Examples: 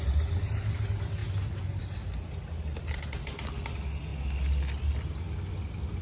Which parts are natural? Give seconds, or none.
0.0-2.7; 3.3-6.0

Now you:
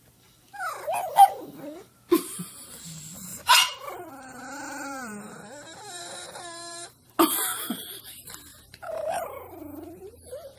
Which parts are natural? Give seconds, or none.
0.0-3.3; 6.9-8.5; 9.4-10.6

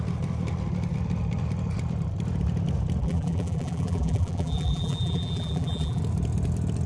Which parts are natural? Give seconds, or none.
0.0-3.0; 6.0-6.9

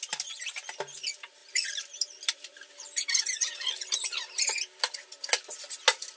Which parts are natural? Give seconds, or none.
0.0-1.4; 5.1-6.2

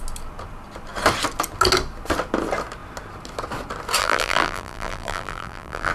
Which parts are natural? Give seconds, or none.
0.0-4.0

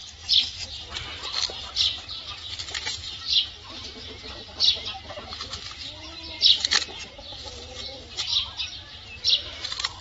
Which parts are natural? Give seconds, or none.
0.0-10.0

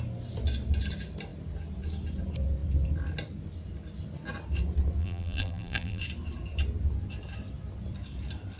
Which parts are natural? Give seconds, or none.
0.0-5.0; 6.0-8.6

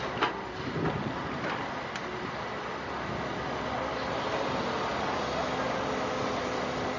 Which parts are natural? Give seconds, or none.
0.0-7.0